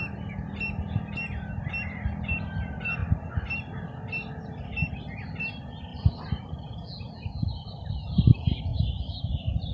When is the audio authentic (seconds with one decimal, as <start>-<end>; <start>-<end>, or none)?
0.0-9.7